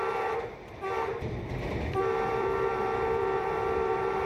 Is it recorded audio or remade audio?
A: remade